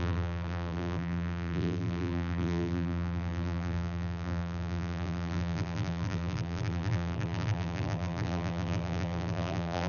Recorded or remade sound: remade